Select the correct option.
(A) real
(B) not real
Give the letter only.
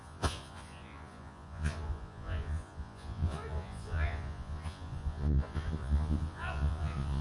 B